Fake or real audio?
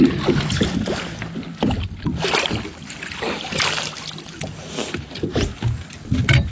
real